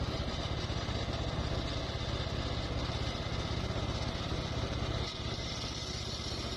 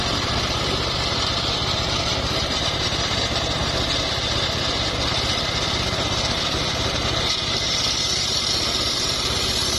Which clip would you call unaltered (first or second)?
first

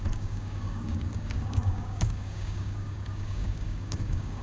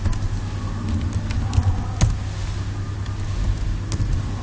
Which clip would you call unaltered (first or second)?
second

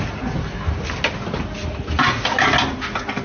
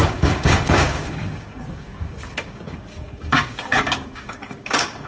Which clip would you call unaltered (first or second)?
first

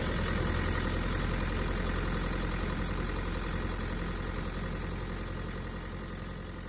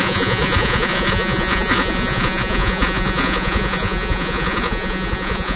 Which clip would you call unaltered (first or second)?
first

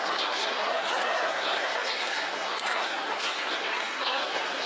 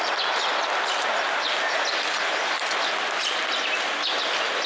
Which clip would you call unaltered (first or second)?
second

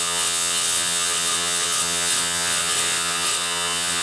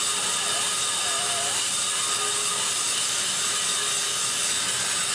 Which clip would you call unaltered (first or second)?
second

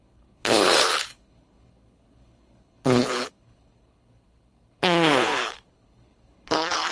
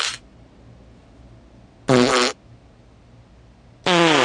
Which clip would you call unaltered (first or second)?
second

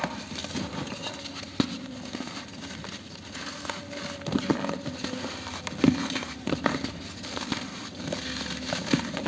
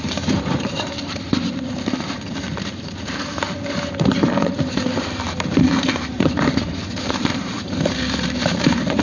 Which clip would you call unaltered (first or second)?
first